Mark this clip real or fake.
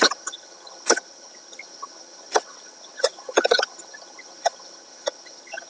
fake